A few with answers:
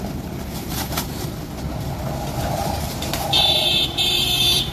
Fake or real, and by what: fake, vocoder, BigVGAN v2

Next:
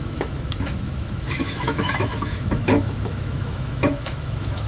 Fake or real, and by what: fake, autoencoder, DAC-VAE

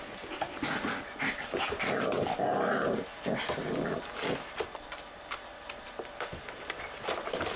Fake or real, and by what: real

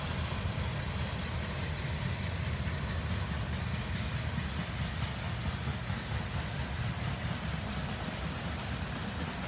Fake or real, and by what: real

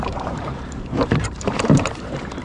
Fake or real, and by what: fake, vocoder, BigVGAN v2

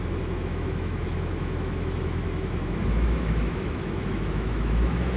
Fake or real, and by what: fake, autoencoder, DAC-VAE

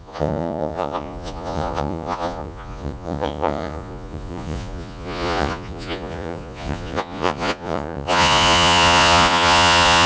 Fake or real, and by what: fake, vocoder, Vocos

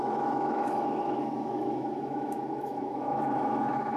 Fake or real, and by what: fake, autoencoder, DAC-VAE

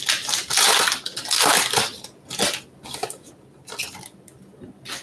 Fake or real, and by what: real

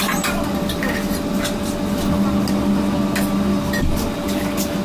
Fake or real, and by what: real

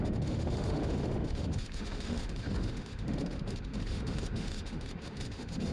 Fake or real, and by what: fake, autoencoder, DAC-VAE